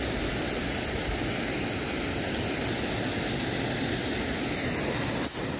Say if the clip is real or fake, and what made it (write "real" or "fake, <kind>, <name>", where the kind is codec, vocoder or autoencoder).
real